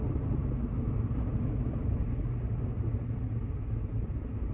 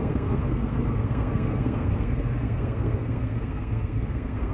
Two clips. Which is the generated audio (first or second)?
second